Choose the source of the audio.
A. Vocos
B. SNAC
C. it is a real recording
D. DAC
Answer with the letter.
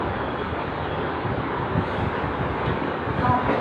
D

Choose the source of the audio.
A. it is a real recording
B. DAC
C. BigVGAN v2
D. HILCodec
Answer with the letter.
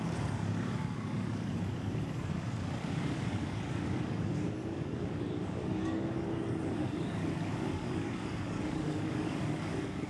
B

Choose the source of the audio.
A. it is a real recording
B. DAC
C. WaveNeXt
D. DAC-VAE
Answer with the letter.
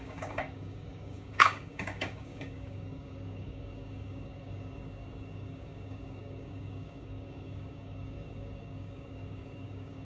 B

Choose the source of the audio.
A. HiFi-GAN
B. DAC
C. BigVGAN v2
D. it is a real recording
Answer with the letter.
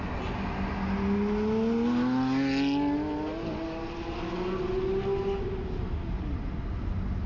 D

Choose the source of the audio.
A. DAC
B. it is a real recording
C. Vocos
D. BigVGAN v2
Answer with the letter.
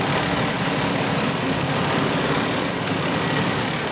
A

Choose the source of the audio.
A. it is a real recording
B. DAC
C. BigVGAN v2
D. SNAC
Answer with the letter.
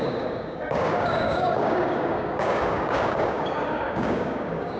B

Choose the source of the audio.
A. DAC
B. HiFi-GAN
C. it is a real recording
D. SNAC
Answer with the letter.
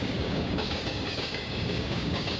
A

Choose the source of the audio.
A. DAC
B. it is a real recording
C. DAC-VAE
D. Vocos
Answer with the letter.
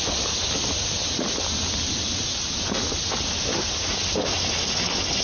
B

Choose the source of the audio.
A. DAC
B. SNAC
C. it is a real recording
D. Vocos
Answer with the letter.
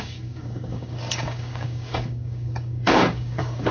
A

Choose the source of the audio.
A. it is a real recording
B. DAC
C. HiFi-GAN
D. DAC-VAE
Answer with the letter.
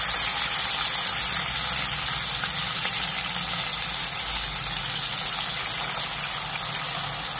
A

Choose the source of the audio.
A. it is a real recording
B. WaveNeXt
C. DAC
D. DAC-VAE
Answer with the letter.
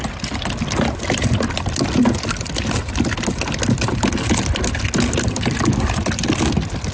A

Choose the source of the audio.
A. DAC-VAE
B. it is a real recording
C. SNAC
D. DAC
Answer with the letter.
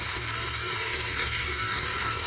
D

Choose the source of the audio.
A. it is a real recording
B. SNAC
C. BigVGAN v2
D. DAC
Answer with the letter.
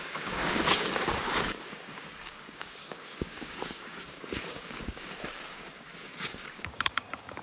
D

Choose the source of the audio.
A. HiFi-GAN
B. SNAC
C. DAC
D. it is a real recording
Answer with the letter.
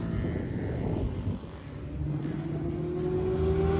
D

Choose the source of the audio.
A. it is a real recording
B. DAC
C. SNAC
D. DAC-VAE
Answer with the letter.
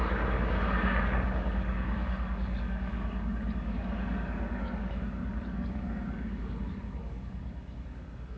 B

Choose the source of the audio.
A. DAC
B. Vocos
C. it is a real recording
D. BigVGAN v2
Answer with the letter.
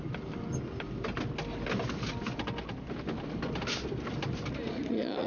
C